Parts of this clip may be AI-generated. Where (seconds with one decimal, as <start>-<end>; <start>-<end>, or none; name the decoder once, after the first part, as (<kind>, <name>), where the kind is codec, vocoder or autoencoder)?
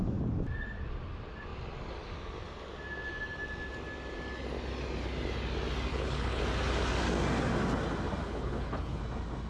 5.9-6.4 (codec, HILCodec); 8.2-9.0